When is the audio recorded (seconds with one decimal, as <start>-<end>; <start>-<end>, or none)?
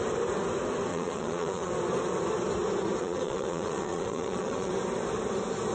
0.0-0.9; 1.7-3.0; 4.7-5.7